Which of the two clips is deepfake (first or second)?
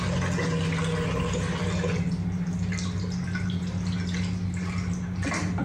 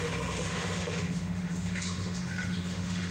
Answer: second